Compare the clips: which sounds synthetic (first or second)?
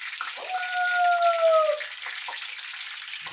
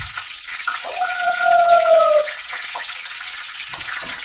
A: second